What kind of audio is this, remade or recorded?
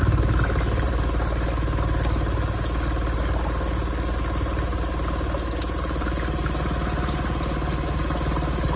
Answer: recorded